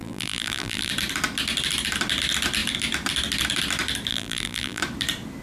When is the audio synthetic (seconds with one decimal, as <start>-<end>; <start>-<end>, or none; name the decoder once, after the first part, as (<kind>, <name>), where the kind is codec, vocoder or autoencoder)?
0.0-0.9 (vocoder, BigVGAN v2); 4.1-4.8